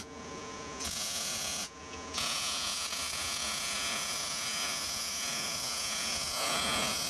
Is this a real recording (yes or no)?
no